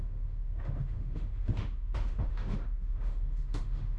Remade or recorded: remade